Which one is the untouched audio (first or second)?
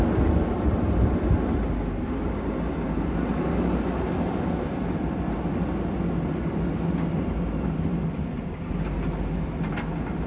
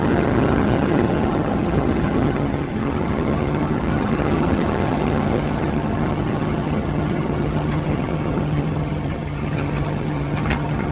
first